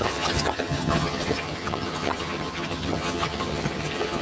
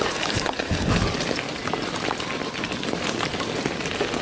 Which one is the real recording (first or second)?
second